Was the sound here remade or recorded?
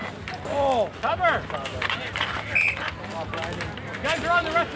recorded